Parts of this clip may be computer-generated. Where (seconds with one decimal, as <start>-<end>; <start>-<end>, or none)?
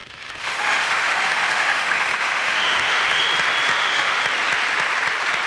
0.0-3.3; 3.7-4.2